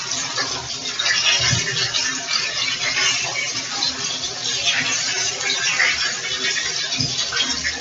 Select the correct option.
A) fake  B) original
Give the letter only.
B